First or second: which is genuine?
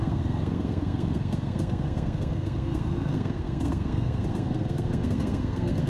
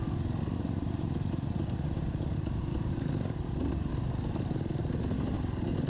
second